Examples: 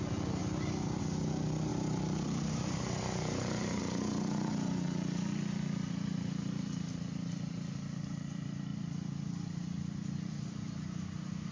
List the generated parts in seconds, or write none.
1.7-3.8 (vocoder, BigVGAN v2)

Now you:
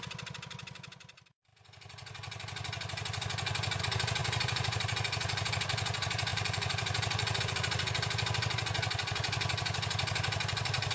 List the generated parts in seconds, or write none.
4.2-5.5 (vocoder, BigVGAN v2); 6.3-7.4

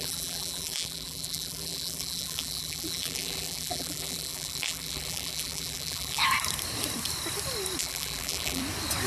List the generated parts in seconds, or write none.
0.0-6.2 (vocoder, BigVGAN v2); 7.8-8.6

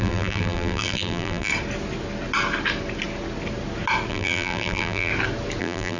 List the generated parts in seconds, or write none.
0.0-1.5 (vocoder, BigVGAN v2); 4.1-5.1; 5.6-6.0

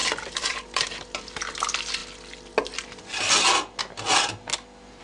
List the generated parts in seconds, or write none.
0.0-2.0 (vocoder, BigVGAN v2)